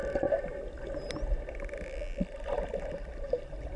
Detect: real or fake real